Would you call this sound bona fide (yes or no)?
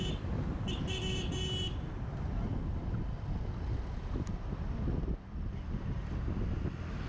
yes